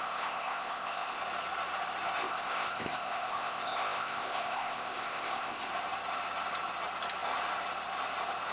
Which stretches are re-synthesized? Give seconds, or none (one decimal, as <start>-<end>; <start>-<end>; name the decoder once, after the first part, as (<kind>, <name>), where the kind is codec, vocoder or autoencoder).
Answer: 0.0-1.2 (codec, ZipCodec); 2.2-5.7